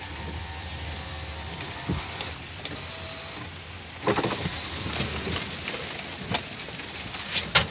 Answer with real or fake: real